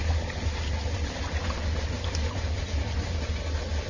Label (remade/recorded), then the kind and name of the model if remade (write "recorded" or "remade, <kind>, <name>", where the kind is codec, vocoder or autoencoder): recorded